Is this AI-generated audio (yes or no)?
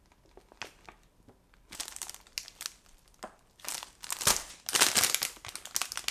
no